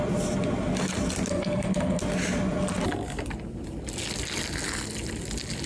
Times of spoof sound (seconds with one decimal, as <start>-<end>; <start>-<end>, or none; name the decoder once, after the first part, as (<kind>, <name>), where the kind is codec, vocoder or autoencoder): 1.3-2.0 (codec, SNAC)